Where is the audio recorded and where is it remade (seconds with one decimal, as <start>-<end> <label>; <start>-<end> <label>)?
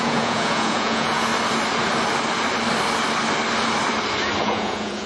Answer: 0.0-1.3 remade; 1.3-4.4 recorded; 4.4-5.1 remade